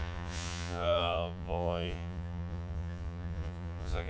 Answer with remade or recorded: remade